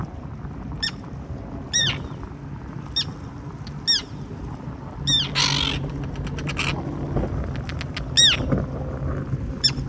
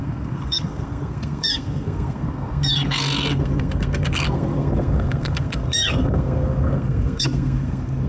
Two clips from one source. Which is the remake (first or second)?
second